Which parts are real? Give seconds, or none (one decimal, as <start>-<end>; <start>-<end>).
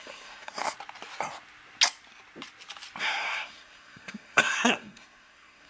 0.6-3.0